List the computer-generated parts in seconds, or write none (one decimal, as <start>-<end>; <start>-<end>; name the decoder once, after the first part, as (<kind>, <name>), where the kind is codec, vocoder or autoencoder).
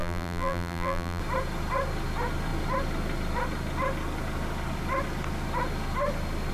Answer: 0.0-1.2 (vocoder, BigVGAN v2)